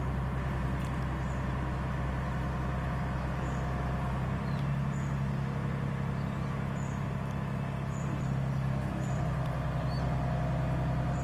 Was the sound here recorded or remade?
recorded